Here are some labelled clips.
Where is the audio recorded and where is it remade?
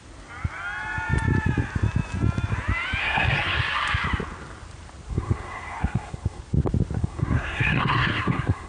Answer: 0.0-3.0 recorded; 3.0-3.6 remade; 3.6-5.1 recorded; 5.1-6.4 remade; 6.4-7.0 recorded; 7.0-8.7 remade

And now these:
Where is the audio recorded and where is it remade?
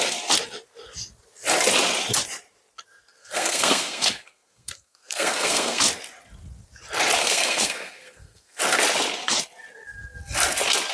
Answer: 0.0-3.2 recorded; 3.2-5.8 remade; 5.8-7.2 recorded; 7.2-8.6 remade; 8.6-10.9 recorded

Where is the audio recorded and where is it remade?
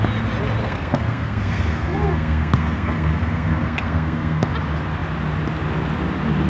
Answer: 0.0-0.6 recorded; 0.6-4.5 remade; 4.5-6.5 recorded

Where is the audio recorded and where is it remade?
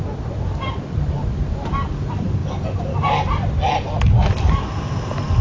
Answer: 0.0-5.4 recorded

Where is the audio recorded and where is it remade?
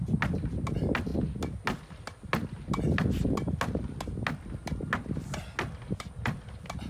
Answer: 0.0-6.9 recorded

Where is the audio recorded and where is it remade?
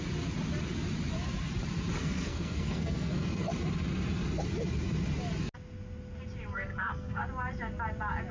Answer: 0.0-2.0 recorded; 2.0-3.5 remade; 3.5-6.5 recorded; 6.5-7.2 remade; 7.2-8.3 recorded